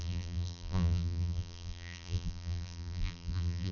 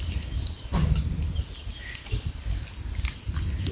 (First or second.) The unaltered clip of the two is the second